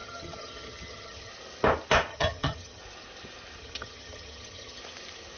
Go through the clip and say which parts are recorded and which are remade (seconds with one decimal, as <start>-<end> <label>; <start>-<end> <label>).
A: 0.0-1.3 remade; 1.3-2.1 recorded; 2.1-2.8 remade; 2.8-3.6 recorded; 3.6-4.8 remade; 4.8-5.4 recorded